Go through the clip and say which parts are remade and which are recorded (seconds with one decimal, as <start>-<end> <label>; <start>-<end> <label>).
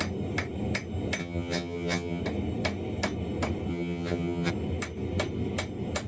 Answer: 0.0-1.2 recorded; 1.2-2.2 remade; 2.2-3.7 recorded; 3.7-4.5 remade; 4.5-6.1 recorded